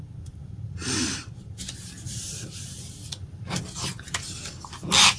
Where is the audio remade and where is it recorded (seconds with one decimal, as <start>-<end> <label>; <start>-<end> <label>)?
0.0-0.4 recorded; 0.4-1.6 remade; 1.6-2.1 recorded; 2.1-2.9 remade; 2.9-5.2 recorded

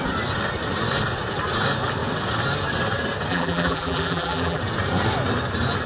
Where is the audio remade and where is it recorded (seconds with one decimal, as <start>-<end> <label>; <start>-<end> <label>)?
0.0-3.3 recorded; 3.3-4.6 remade; 4.6-5.9 recorded

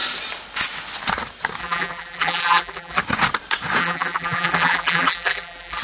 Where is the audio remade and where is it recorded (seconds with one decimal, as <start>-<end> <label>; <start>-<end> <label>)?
0.0-1.6 recorded; 1.6-3.0 remade; 3.0-3.8 recorded; 3.8-5.8 remade

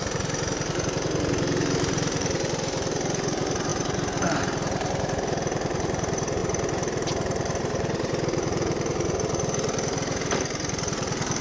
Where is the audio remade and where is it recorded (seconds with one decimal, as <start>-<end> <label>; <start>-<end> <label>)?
0.0-11.4 remade

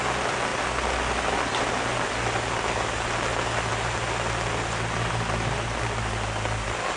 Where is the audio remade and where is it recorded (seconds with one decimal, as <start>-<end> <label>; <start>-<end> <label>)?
0.0-0.5 recorded; 0.5-1.8 remade; 1.8-7.0 recorded

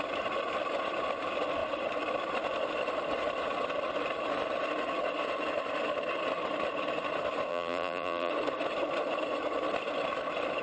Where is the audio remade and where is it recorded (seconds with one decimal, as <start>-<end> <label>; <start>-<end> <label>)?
0.0-7.5 recorded; 7.5-8.3 remade; 8.3-10.6 recorded